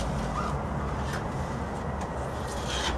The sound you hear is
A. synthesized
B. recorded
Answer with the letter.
B